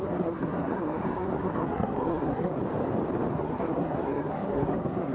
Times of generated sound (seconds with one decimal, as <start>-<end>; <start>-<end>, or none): 0.0-2.6; 3.3-5.1